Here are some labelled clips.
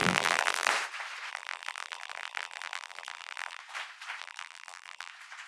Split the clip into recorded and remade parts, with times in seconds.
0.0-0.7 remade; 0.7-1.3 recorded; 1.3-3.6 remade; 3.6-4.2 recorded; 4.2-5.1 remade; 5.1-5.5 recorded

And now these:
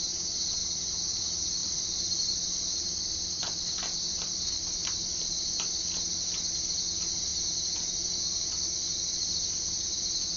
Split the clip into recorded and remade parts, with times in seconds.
0.0-1.6 recorded; 1.6-3.0 remade; 3.0-3.4 recorded; 3.4-5.8 remade; 5.8-10.4 recorded

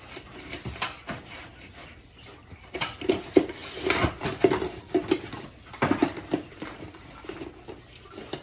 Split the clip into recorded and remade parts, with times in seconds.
0.0-1.8 recorded; 1.8-3.1 remade; 3.1-3.6 recorded; 3.6-4.1 remade; 4.1-6.0 recorded; 6.0-7.2 remade; 7.2-8.4 recorded